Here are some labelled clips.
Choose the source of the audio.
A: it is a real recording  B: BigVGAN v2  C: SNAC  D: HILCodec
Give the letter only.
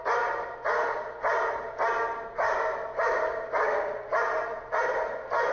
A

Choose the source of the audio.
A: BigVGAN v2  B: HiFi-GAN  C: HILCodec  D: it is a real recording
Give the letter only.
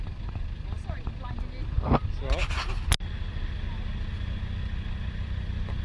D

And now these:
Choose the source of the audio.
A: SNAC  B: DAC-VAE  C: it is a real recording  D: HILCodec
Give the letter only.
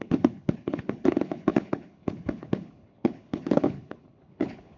D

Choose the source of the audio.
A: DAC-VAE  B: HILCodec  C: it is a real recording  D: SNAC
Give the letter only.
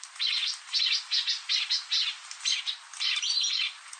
C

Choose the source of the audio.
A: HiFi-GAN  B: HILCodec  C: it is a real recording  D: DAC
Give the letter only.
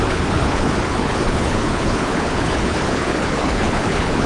B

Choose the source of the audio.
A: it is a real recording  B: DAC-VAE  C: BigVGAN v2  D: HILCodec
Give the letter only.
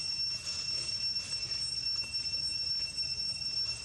A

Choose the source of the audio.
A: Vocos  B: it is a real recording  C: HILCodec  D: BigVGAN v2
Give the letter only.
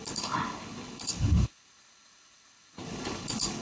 C